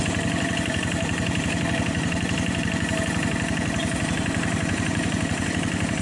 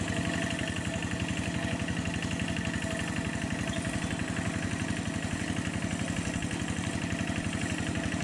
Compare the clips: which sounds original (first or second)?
second